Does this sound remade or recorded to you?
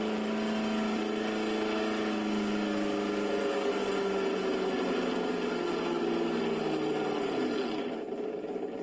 recorded